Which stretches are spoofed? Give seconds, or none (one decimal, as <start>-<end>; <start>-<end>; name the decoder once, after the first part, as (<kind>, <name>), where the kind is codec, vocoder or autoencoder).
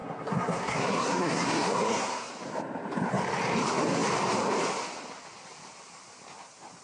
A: 0.0-2.3 (codec, SNAC)